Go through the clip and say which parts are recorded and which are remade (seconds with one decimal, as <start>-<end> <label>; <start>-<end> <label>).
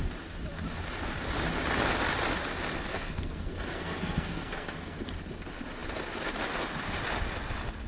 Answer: 0.0-2.9 recorded; 2.9-5.1 remade; 5.1-7.9 recorded